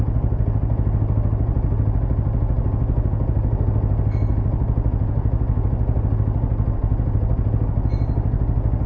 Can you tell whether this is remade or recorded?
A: recorded